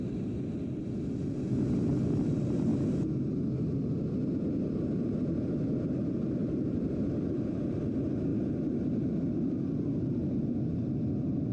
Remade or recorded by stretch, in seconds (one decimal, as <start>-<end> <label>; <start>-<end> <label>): 0.0-6.4 recorded; 6.4-7.0 remade; 7.0-8.3 recorded; 8.3-10.3 remade; 10.3-11.5 recorded